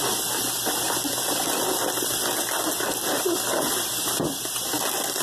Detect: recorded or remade recorded